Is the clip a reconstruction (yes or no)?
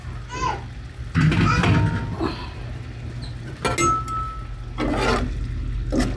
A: no